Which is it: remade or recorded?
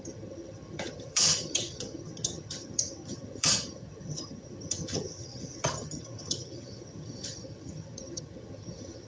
remade